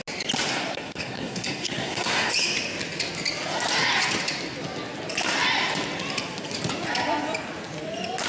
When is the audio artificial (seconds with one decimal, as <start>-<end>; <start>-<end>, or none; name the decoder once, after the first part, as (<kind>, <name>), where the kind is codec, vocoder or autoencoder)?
0.5-2.3 (codec, SNAC)

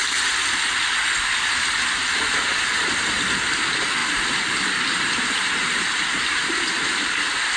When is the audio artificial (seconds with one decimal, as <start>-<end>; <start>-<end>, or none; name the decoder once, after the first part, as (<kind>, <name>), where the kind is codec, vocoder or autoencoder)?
4.0-7.6 (vocoder, BigVGAN v2)

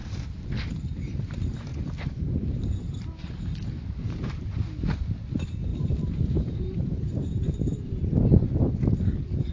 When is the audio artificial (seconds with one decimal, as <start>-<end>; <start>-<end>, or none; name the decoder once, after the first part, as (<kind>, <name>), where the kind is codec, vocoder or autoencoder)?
0.7-9.5 (vocoder, BigVGAN v2)

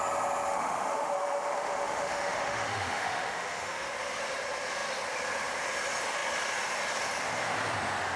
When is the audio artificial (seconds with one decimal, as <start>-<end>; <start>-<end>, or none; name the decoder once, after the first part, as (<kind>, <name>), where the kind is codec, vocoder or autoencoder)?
0.5-3.9 (autoencoder, DAC-VAE)